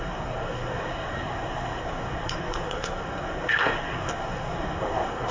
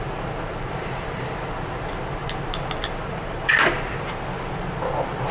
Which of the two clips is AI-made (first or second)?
first